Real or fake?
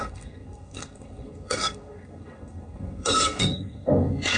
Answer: fake